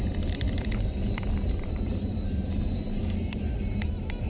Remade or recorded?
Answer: remade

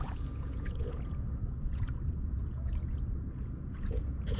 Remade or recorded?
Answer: remade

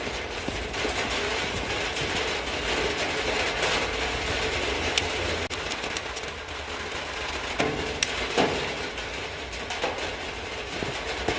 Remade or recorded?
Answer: recorded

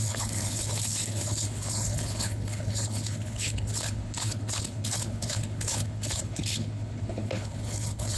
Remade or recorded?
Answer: remade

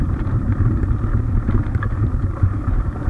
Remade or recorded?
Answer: remade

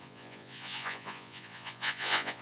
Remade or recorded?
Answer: remade